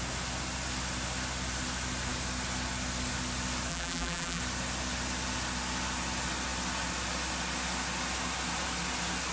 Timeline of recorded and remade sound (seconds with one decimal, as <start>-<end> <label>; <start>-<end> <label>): 0.0-3.7 recorded; 3.7-4.4 remade; 4.4-9.3 recorded